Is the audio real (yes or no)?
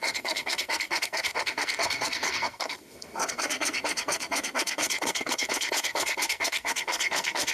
no